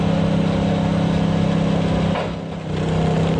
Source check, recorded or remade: recorded